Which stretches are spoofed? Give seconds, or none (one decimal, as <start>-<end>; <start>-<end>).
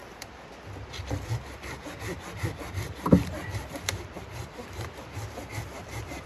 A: none